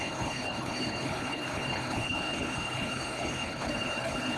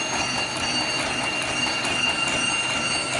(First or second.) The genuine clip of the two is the second